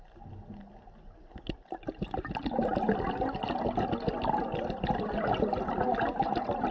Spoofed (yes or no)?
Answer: no